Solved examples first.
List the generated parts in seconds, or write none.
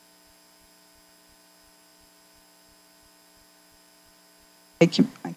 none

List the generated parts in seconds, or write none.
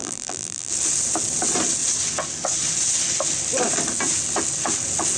0.0-0.7 (vocoder, BigVGAN v2)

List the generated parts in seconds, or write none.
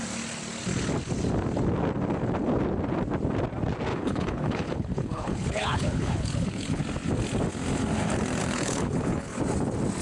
3.9-6.8 (codec, HILCodec); 8.4-9.4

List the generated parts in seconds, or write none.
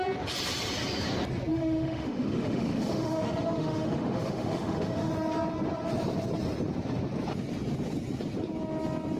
1.5-5.1 (autoencoder, DAC-VAE)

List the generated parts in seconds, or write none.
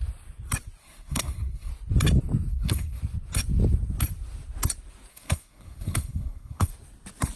0.8-1.7 (codec, SNAC); 2.5-3.0; 5.1-6.7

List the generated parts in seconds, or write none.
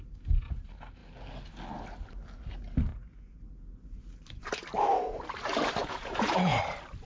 2.9-3.4 (vocoder, Vocos); 5.8-6.6